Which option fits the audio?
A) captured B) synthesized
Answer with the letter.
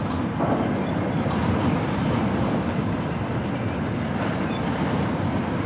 A